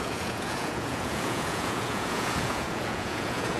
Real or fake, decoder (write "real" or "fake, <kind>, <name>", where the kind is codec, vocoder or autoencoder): fake, vocoder, Vocos